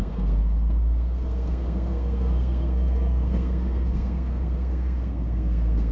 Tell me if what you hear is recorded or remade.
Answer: remade